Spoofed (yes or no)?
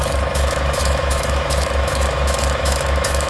yes